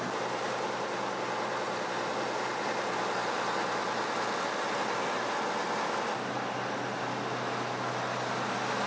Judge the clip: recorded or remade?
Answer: recorded